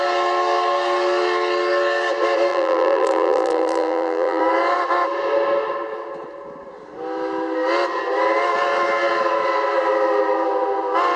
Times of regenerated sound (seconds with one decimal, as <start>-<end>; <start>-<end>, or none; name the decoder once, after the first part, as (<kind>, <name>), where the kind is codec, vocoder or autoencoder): 2.5-4.4 (vocoder, BigVGAN v2)